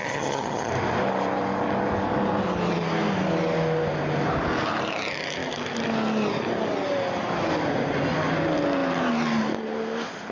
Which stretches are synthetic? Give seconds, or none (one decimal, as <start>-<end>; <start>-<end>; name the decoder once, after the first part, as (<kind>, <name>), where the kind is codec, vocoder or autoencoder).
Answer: 0.0-0.7 (vocoder, HiFi-GAN)